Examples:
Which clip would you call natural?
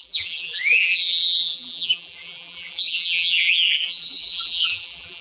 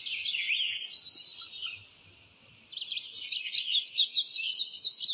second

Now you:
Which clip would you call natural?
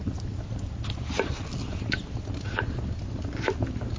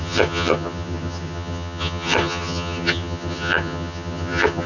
first